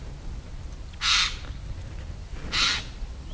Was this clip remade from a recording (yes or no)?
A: no